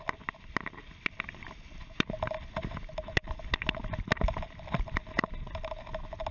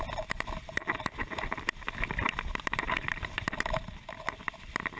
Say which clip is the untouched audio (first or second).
first